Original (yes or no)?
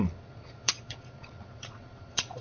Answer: no